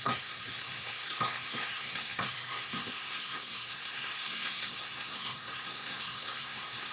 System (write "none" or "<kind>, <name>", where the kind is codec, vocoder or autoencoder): codec, SNAC